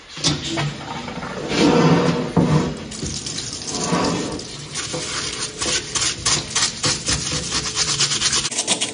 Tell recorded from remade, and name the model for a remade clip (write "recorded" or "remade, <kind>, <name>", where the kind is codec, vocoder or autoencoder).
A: recorded